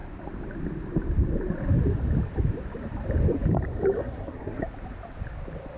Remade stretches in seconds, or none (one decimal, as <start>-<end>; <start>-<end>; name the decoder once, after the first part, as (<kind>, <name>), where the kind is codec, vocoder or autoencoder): 4.0-4.6 (codec, SNAC)